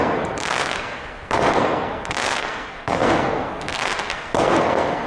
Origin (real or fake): fake